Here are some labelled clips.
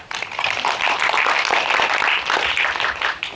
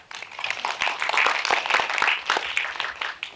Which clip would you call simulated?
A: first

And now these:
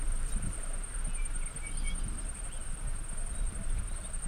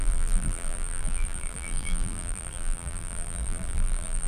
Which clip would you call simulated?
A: second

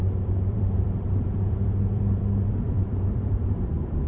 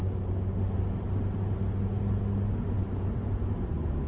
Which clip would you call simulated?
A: first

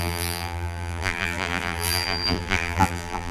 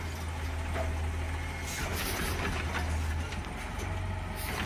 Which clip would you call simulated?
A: first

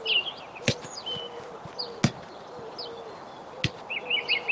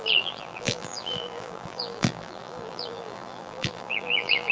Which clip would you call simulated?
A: second